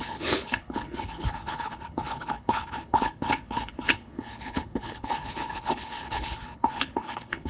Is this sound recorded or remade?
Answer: remade